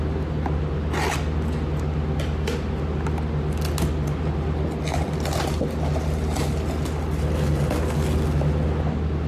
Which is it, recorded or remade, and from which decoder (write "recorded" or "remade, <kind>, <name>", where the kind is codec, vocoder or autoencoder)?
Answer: recorded